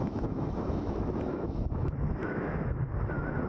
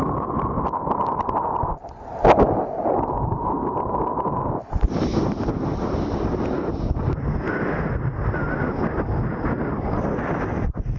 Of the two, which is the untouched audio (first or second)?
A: second